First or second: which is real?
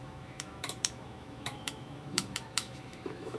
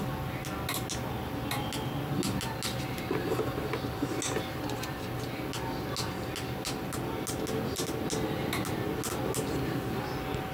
second